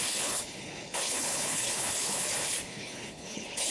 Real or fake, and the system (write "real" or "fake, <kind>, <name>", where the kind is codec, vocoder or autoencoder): fake, codec, HILCodec